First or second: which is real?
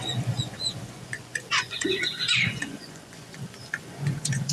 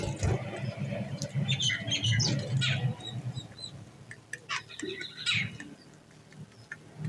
second